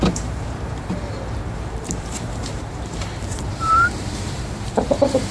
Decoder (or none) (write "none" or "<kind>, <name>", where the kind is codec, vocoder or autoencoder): vocoder, BigVGAN v2